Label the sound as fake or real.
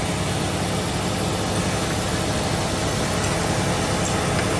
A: real